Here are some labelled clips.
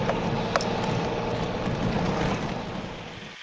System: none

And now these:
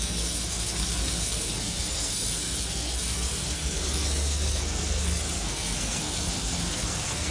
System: codec, SNAC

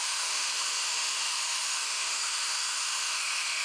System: autoencoder, DAC-VAE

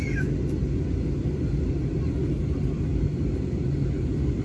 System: none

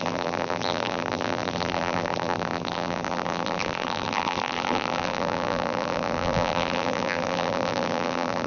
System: vocoder, BigVGAN v2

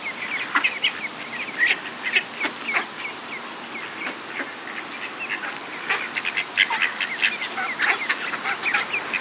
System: none